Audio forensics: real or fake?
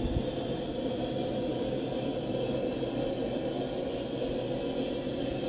real